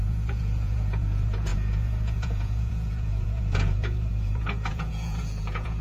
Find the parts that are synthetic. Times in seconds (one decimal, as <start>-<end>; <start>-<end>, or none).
0.0-5.8